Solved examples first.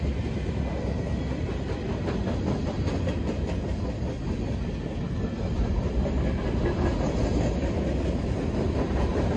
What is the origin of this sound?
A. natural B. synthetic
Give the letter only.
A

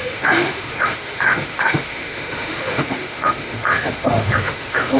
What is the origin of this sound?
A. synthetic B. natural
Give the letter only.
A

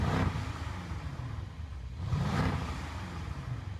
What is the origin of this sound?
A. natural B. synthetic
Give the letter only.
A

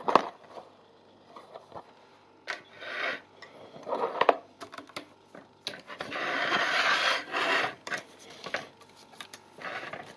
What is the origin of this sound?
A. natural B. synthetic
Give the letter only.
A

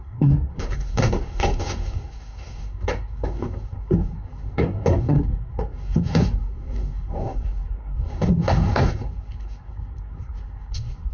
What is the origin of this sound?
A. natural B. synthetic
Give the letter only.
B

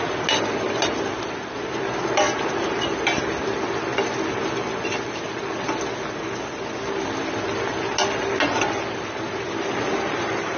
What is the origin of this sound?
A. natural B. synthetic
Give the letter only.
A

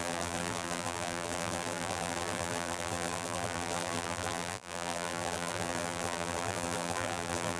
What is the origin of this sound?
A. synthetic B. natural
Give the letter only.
A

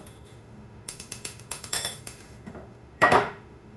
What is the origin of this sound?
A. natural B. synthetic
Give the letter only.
B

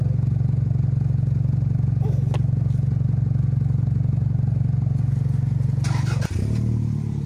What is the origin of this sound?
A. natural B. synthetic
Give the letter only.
A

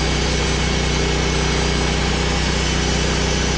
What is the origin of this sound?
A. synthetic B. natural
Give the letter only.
B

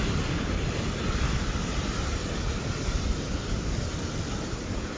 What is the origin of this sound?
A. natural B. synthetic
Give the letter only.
A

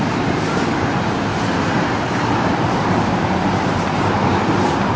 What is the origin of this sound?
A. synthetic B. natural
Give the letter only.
A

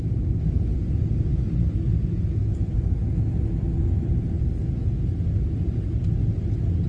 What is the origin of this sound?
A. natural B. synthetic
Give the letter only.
A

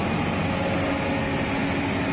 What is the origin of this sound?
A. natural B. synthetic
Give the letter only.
A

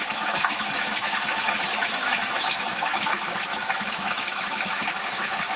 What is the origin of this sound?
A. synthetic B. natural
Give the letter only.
A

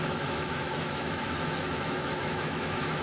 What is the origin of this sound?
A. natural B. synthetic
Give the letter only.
B